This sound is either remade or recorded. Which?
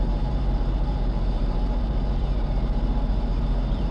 remade